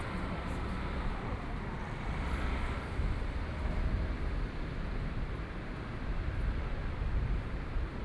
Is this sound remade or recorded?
remade